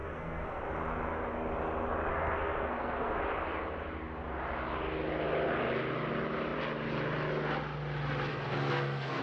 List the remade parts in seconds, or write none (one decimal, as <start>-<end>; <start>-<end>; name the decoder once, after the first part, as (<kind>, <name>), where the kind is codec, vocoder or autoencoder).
0.0-0.6 (codec, SNAC); 2.1-3.2; 8.3-9.2